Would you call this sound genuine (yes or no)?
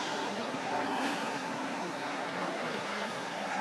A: no